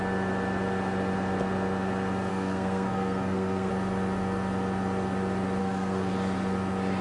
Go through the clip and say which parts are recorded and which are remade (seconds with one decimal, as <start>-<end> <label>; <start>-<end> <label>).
0.0-2.3 recorded; 2.3-3.7 remade; 3.7-5.6 recorded; 5.6-6.1 remade; 6.1-7.0 recorded